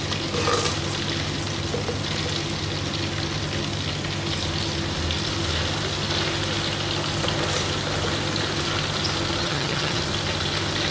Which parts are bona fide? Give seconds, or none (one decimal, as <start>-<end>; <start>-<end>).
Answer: 0.0-9.4; 10.0-10.9